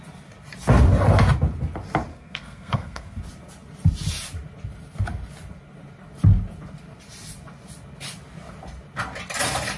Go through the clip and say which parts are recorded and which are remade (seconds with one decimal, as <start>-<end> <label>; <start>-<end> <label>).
0.0-2.1 recorded; 2.1-3.2 remade; 3.2-9.8 recorded